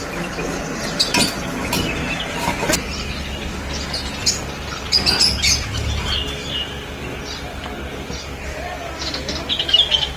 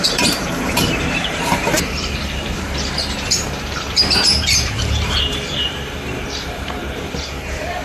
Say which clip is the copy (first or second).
second